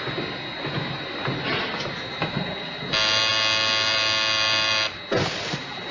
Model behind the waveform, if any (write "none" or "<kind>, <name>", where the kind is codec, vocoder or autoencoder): none